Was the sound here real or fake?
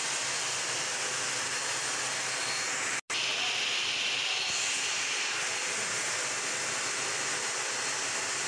real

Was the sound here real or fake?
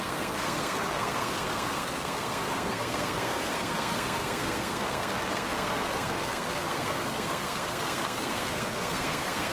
fake